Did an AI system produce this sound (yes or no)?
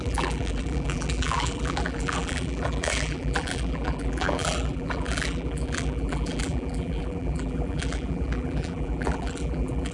yes